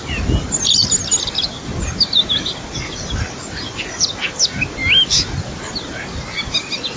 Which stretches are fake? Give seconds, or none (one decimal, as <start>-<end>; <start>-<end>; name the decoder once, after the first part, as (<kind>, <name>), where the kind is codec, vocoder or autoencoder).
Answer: none